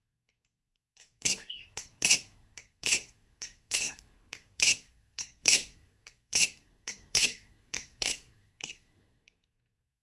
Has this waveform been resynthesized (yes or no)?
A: yes